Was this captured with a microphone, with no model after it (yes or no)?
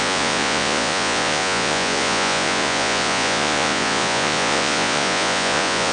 no